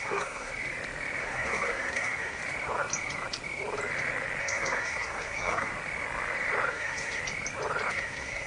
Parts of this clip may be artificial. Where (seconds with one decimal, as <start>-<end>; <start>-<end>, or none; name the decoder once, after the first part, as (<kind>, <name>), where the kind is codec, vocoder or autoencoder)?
0.0-0.5 (codec, SNAC); 1.2-2.4; 4.4-5.7; 6.7-7.2; 7.9-8.5